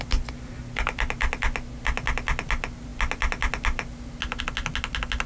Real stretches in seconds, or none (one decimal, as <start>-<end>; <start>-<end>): 0.0-5.3